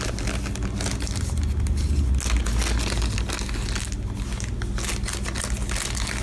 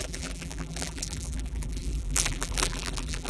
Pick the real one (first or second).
first